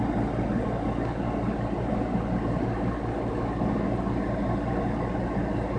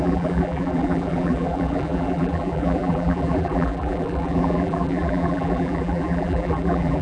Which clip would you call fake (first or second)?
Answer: second